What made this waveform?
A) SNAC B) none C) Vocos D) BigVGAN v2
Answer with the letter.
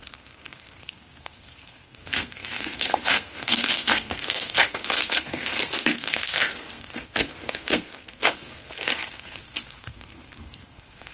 A